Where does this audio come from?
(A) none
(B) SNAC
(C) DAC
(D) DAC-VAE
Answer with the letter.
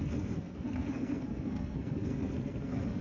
B